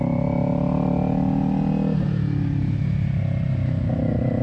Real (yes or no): yes